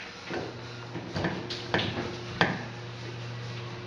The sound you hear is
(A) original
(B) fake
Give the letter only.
A